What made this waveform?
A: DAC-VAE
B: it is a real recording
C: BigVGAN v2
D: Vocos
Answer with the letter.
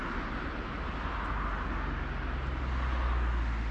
B